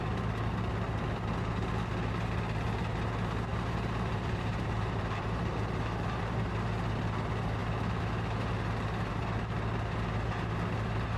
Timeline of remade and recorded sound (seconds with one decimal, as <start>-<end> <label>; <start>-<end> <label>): 0.0-3.5 recorded; 3.5-6.5 remade; 6.5-11.2 recorded